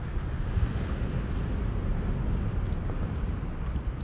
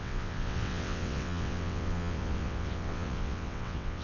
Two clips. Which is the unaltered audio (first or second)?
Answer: first